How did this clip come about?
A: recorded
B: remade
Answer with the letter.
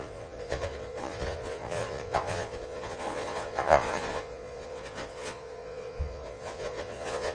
B